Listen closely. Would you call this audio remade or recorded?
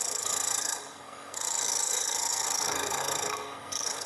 remade